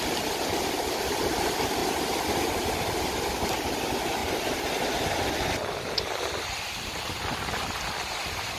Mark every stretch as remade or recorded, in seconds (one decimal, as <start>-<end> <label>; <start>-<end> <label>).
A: 0.0-1.8 remade; 1.8-3.2 recorded; 3.2-4.2 remade; 4.2-8.6 recorded